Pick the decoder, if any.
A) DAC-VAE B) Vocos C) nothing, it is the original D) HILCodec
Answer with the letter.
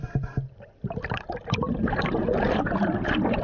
C